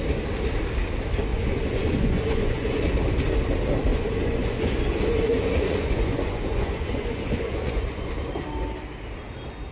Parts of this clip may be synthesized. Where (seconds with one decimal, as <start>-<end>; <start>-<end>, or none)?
1.3-2.9; 3.9-8.1